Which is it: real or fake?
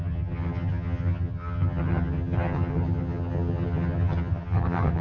fake